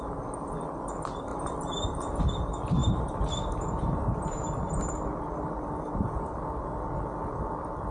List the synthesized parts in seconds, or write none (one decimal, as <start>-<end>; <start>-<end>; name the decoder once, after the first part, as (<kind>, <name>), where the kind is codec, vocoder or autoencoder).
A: 1.3-2.2 (vocoder, BigVGAN v2); 2.8-6.7